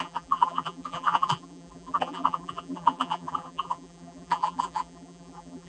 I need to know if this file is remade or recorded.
remade